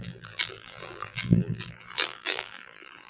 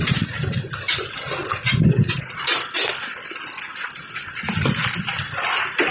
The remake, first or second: first